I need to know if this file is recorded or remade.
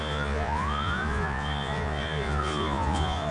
remade